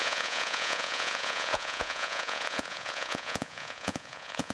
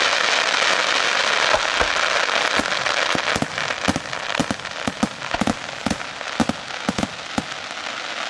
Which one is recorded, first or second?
second